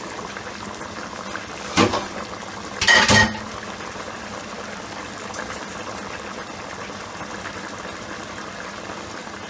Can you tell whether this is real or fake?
real